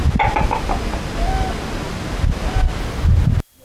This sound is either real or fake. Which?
real